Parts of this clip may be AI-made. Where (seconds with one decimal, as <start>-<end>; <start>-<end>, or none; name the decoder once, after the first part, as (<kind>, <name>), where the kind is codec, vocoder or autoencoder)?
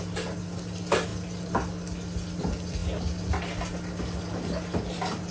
none